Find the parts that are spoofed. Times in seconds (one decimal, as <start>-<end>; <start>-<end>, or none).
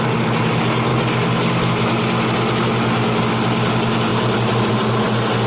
0.9-1.7